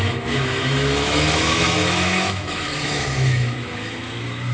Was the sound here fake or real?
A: fake